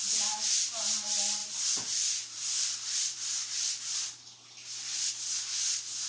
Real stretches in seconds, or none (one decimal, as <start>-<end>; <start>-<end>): 0.0-6.1